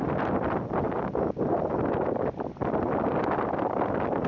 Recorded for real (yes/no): yes